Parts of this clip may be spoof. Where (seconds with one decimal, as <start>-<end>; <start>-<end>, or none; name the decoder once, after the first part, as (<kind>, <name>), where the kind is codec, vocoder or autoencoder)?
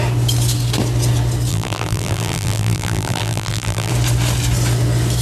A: 1.5-3.9 (vocoder, BigVGAN v2)